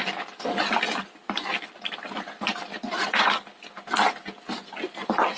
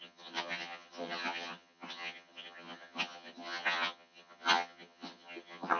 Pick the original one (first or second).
first